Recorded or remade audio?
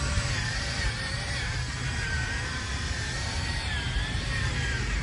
remade